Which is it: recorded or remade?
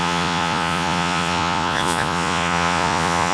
remade